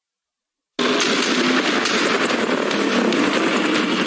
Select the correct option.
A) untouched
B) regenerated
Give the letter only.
A